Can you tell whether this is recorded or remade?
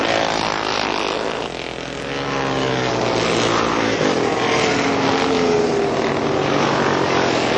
recorded